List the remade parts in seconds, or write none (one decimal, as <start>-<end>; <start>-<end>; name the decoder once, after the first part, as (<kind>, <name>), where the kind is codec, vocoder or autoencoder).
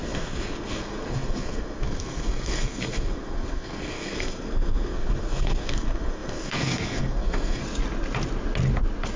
0.0-7.6 (codec, SNAC)